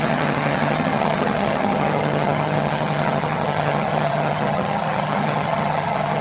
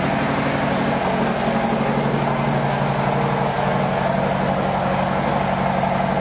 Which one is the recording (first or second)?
second